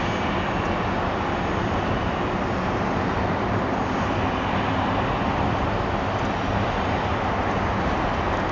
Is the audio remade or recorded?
recorded